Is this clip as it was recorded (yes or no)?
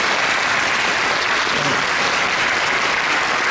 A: yes